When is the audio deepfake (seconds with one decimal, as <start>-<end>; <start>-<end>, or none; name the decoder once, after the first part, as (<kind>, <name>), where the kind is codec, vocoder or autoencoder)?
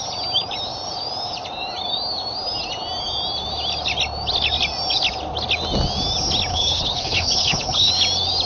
6.5-7.9 (codec, HILCodec)